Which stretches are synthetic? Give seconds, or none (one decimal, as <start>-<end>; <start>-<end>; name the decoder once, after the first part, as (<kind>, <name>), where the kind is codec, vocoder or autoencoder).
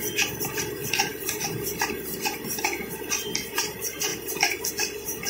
none